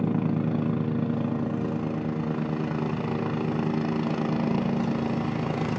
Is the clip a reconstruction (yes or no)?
no